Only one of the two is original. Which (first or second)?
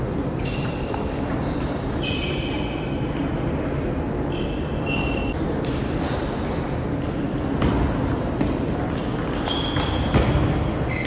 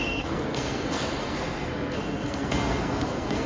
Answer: first